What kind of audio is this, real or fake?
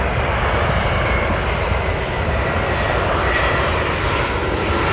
real